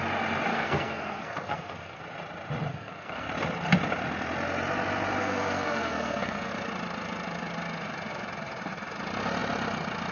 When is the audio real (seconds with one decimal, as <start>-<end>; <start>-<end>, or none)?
0.0-0.5; 2.0-2.7; 3.3-5.2; 6.5-10.1